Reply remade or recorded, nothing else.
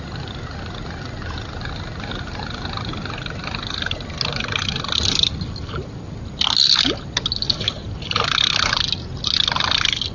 recorded